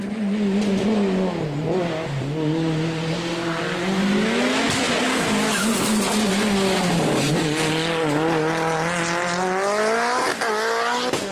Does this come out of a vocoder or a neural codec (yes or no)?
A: no